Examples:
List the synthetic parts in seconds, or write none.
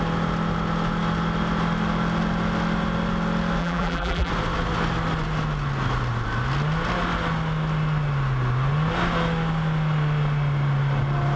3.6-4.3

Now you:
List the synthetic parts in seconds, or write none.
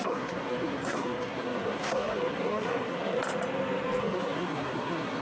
0.0-3.2; 4.0-5.2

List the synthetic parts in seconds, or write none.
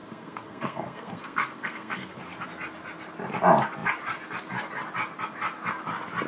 0.0-2.2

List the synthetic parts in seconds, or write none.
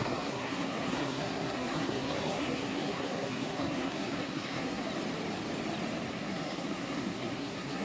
0.0-4.9; 6.1-7.8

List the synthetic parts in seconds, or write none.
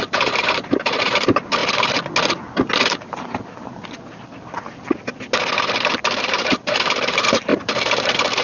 0.0-1.6; 6.0-8.4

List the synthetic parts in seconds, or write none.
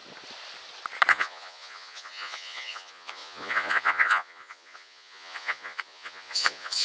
1.1-6.8